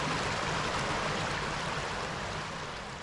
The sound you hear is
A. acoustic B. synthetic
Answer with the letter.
A